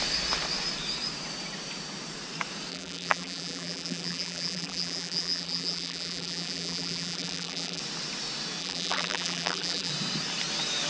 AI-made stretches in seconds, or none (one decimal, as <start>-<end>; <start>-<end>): 2.7-7.8; 8.6-9.9